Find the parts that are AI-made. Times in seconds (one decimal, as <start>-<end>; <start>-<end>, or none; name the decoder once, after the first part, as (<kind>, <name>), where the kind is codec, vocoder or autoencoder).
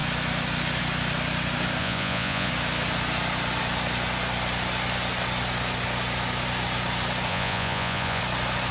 1.8-2.5 (vocoder, Vocos); 7.3-8.2